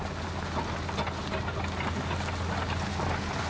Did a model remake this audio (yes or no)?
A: no